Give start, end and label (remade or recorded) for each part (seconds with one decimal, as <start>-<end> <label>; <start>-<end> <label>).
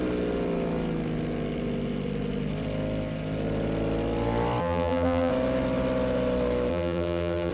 0.0-4.6 recorded; 4.6-5.3 remade; 5.3-6.7 recorded; 6.7-7.5 remade